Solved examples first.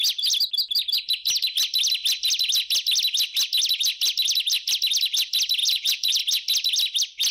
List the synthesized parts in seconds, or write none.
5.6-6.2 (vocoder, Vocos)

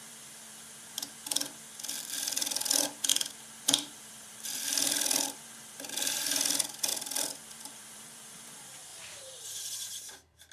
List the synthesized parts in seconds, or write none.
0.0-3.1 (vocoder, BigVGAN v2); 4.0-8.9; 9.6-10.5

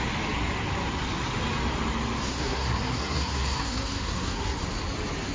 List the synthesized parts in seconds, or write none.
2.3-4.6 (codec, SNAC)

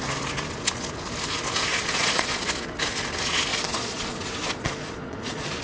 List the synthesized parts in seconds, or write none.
1.7-2.4 (vocoder, Vocos); 3.5-5.6

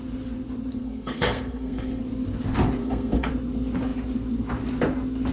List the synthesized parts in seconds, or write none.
0.7-2.0 (codec, SNAC); 2.8-3.3

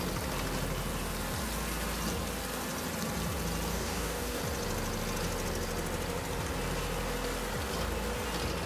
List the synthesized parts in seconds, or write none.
3.7-4.4 (codec, DAC)